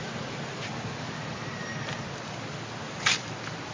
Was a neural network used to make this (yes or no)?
no